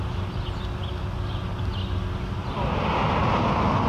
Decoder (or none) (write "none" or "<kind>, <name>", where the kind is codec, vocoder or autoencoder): none